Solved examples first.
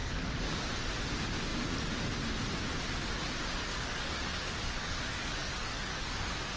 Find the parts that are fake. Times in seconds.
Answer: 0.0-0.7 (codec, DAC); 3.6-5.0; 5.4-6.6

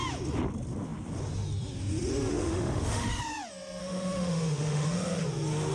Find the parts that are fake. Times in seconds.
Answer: 2.3-3.2 (autoencoder, DAC-VAE); 3.8-5.2

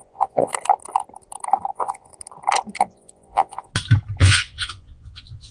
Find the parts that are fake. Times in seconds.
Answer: 0.0-0.5 (vocoder, Vocos); 1.7-2.1; 2.8-3.7; 4.2-5.5